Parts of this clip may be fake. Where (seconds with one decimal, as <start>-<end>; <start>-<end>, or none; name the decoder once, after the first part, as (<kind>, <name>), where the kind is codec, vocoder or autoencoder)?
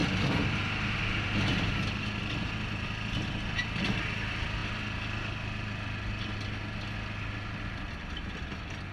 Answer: none